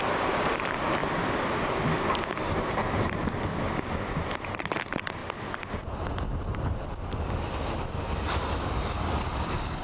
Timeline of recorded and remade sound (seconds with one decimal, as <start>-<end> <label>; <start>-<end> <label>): 0.0-1.0 remade; 1.0-2.1 recorded; 2.1-3.5 remade; 3.5-4.2 recorded; 4.2-5.2 remade; 5.2-8.6 recorded; 8.6-9.8 remade

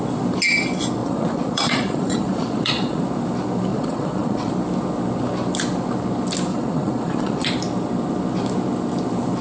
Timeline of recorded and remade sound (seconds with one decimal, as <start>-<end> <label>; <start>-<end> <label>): 0.0-1.0 recorded; 1.0-3.0 remade; 3.0-3.7 recorded; 3.7-4.5 remade; 4.5-6.5 recorded; 6.5-7.5 remade; 7.5-9.4 recorded

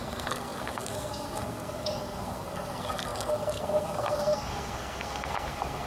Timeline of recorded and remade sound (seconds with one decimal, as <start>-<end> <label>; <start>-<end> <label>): 0.0-5.9 remade